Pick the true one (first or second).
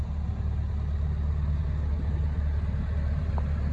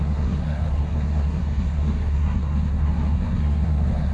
first